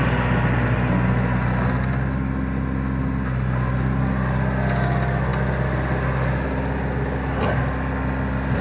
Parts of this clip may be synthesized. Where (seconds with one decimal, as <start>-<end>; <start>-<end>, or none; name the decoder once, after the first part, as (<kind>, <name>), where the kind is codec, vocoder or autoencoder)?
none